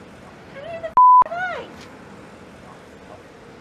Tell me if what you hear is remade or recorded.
recorded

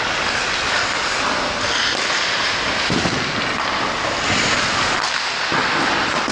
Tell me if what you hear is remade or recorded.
recorded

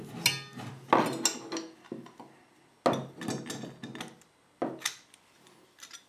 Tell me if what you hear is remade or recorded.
recorded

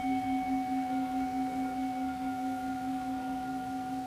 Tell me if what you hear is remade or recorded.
remade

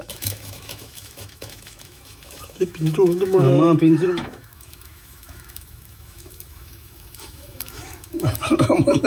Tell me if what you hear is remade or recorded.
remade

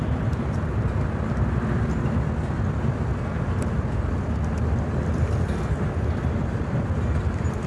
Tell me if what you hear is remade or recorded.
recorded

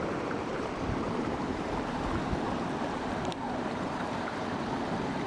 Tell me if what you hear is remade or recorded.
remade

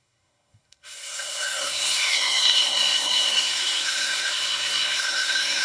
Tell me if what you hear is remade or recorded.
remade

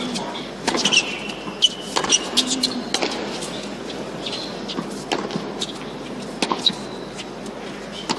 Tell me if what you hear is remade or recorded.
recorded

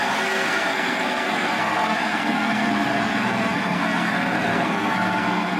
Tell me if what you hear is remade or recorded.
remade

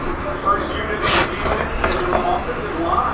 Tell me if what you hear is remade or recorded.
recorded